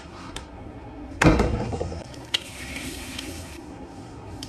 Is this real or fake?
fake